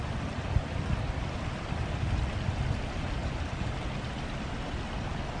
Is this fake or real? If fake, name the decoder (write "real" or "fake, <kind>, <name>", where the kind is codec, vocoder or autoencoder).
real